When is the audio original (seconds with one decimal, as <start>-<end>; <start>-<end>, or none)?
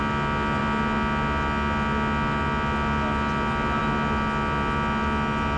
0.0-5.6